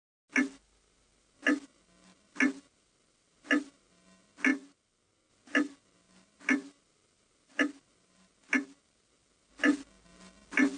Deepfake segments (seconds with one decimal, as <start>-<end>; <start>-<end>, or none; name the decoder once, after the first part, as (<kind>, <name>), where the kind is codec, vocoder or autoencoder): none